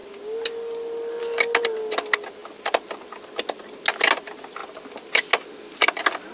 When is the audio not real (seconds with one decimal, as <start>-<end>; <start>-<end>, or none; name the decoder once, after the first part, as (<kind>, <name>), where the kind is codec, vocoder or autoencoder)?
none